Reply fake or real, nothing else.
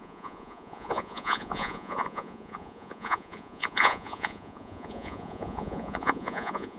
fake